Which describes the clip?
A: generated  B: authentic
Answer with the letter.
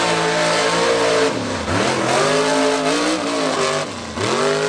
B